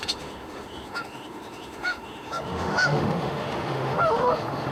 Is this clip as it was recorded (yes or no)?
no